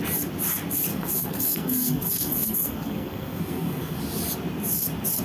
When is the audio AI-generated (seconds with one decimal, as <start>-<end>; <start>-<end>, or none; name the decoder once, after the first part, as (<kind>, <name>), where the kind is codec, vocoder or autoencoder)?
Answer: 0.9-4.0 (codec, SNAC)